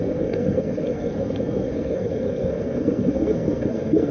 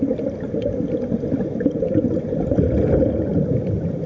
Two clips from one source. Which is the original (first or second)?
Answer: second